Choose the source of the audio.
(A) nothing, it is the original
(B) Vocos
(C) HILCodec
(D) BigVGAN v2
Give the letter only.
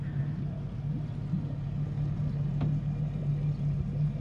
A